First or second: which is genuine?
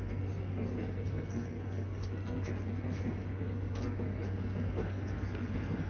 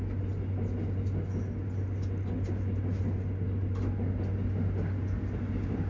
second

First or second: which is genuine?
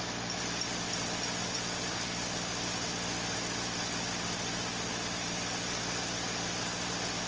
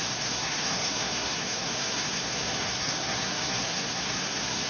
first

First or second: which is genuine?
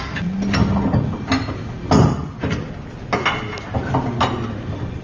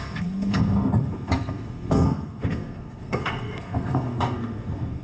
first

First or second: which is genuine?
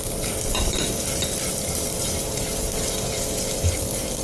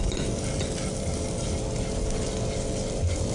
second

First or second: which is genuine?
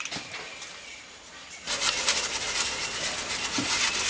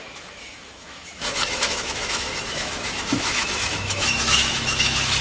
first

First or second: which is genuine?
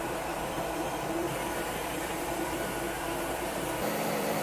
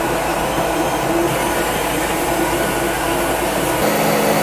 second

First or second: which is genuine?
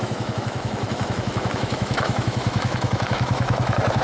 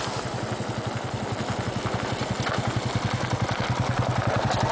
second